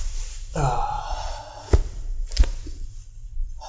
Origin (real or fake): real